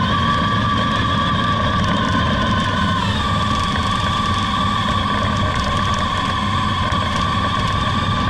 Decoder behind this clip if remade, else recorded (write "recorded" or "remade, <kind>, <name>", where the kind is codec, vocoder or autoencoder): recorded